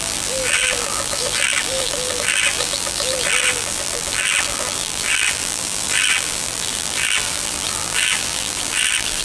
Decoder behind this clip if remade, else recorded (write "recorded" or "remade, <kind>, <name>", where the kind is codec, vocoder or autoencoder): remade, vocoder, BigVGAN v2